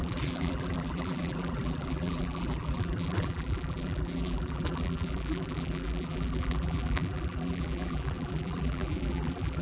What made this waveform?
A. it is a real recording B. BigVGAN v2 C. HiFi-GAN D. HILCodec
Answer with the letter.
B